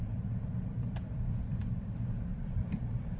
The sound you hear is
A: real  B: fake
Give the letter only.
B